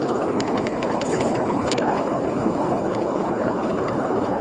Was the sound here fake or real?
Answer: fake